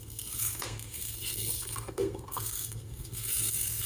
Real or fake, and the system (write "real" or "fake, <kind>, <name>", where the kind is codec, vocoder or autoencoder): fake, codec, SNAC